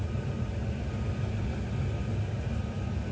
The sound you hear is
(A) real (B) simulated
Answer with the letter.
A